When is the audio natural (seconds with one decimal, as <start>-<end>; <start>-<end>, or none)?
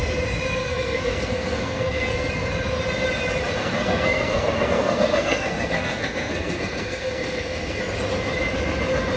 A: 0.0-0.6; 2.3-3.6; 7.8-9.2